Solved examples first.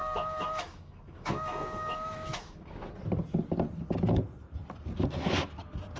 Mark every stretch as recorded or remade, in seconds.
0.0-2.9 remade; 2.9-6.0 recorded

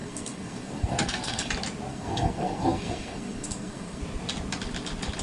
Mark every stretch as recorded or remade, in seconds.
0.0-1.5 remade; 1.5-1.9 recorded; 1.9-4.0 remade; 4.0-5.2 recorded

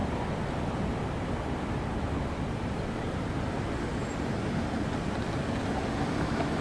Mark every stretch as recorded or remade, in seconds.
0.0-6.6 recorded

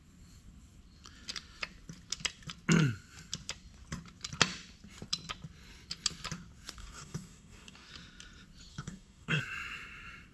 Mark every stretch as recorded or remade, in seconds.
0.0-6.8 recorded; 6.8-7.9 remade; 7.9-8.7 recorded; 8.7-9.4 remade; 9.4-10.3 recorded